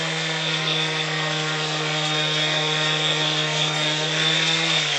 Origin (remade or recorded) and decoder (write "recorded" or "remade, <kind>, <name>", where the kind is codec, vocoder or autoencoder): remade, codec, SNAC